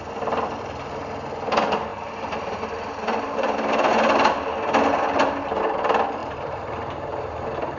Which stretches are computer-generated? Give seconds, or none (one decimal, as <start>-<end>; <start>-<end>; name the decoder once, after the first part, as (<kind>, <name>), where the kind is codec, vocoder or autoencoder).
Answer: 6.2-7.8 (vocoder, BigVGAN v2)